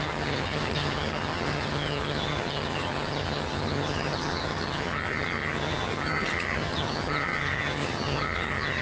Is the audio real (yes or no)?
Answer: no